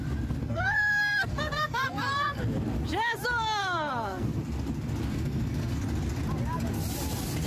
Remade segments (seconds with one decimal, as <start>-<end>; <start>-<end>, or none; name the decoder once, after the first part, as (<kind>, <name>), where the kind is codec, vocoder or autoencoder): 0.4-2.4 (codec, SNAC); 3.6-4.4; 5.1-5.8